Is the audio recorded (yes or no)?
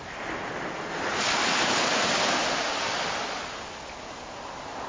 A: yes